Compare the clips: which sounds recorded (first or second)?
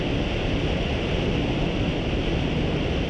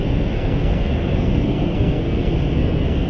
first